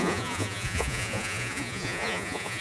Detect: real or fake fake